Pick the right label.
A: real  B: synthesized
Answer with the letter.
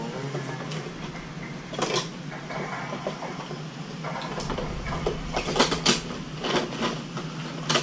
A